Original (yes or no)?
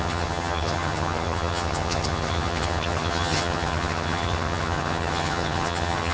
no